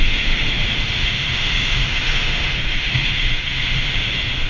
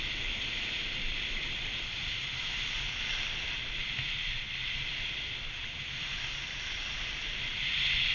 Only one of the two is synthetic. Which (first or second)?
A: first